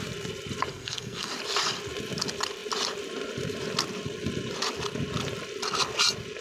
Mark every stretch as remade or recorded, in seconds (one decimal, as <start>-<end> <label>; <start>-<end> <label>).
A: 0.0-0.7 recorded; 0.7-1.3 remade; 1.3-6.4 recorded